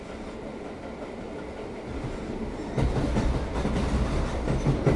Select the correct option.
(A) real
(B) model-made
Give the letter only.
A